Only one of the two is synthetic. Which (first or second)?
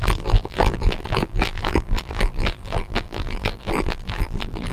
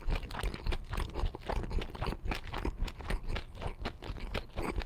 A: first